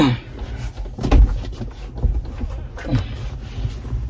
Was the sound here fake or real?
real